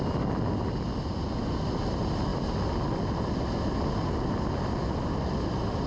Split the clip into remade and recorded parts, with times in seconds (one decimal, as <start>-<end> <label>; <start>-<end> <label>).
0.0-5.9 recorded